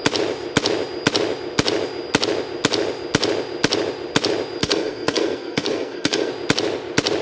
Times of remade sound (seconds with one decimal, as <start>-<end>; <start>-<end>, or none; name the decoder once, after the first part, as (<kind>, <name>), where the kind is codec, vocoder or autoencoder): 4.6-6.3 (codec, SNAC)